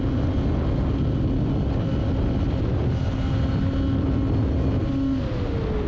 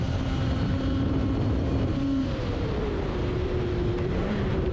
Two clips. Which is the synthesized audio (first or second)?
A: second